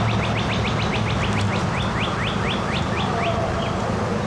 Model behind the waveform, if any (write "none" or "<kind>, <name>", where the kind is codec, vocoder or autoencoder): none